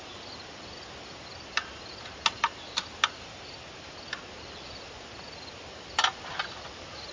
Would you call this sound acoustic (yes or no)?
yes